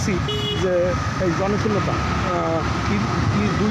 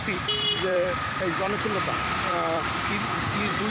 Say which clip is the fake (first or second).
second